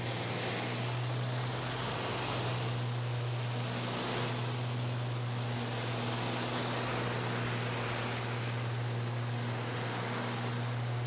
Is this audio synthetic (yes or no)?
no